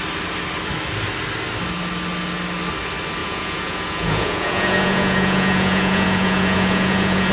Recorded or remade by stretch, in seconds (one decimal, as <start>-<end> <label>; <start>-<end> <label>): 0.0-3.2 recorded; 3.2-7.3 remade